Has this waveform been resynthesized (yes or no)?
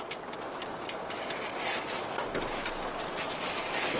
no